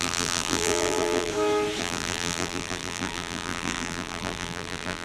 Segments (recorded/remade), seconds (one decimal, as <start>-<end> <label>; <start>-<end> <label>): 0.0-1.3 remade; 1.3-1.8 recorded; 1.8-5.0 remade